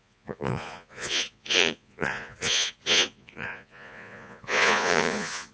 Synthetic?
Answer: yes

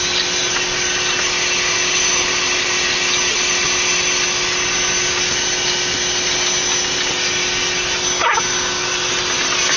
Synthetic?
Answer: no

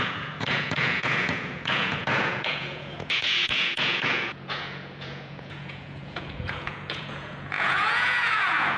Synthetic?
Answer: yes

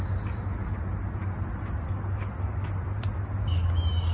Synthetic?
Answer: no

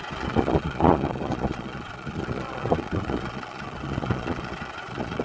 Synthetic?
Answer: yes